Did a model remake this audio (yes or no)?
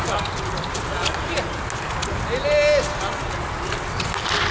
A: no